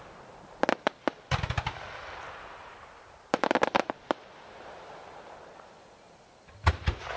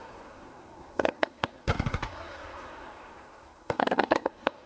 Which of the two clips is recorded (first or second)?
first